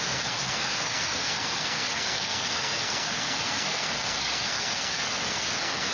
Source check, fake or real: fake